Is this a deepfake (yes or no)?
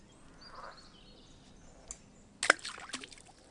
no